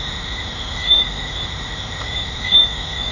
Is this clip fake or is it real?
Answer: fake